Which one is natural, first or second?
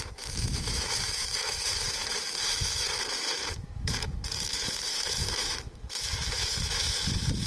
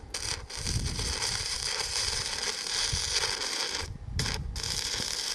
second